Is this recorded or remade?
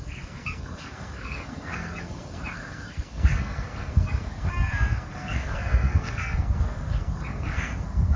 remade